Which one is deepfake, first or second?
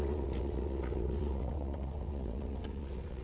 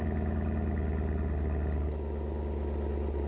first